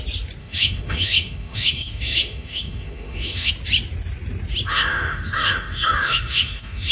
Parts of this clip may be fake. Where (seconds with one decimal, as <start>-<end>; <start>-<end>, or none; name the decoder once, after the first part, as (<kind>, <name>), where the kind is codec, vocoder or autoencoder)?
0.4-3.5 (autoencoder, DAC-VAE); 4.7-6.9

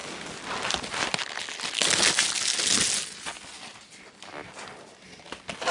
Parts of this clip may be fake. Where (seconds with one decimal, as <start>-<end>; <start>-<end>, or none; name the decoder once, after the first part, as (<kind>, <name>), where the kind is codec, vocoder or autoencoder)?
none

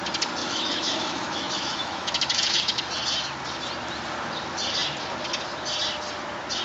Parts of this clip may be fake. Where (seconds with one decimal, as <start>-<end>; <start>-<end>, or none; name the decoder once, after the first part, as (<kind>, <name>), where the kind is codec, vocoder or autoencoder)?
0.4-2.8 (autoencoder, DAC-VAE)